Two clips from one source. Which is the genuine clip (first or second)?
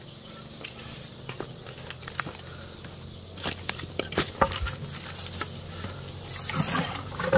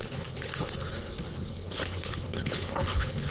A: first